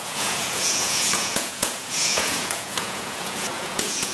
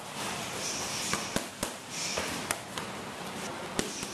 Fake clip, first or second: first